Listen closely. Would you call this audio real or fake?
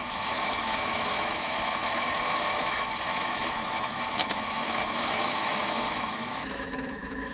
fake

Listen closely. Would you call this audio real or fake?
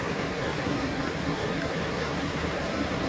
fake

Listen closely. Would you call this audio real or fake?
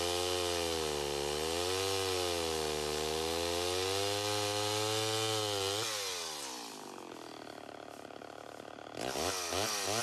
real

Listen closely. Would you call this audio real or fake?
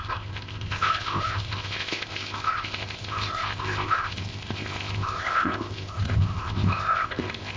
fake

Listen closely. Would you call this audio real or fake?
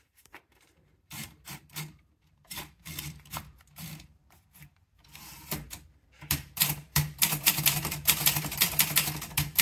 fake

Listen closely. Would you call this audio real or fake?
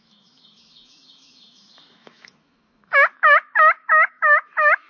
fake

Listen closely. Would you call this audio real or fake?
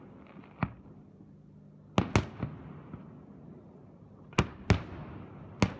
real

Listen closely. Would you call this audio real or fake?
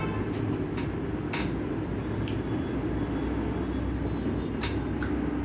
real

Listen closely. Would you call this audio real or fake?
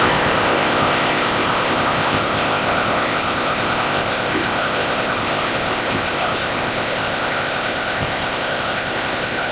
fake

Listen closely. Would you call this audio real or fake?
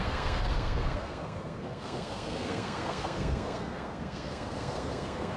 fake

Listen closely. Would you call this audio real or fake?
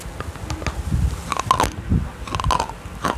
real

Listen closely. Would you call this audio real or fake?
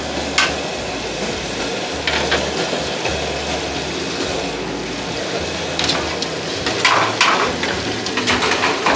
real